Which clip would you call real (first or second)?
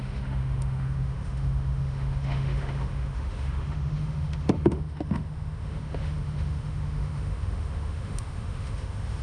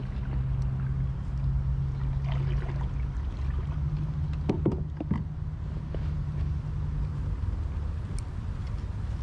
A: second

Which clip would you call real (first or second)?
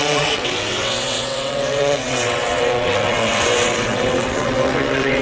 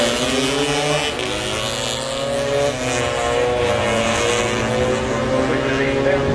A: second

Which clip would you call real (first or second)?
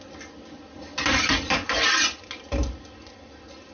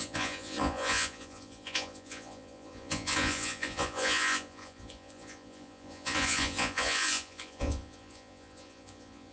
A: first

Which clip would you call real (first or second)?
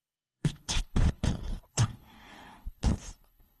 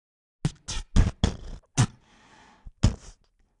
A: second